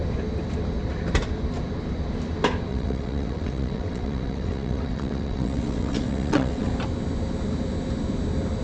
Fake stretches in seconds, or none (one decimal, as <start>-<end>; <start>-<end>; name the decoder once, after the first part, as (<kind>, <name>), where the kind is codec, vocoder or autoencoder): 2.7-6.7 (vocoder, WaveNeXt)